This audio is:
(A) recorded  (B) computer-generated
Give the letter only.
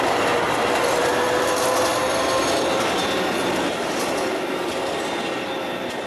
A